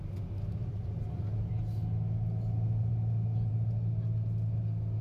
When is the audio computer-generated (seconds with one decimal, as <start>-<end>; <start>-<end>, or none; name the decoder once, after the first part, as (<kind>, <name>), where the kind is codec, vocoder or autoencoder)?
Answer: 0.6-1.5 (vocoder, BigVGAN v2)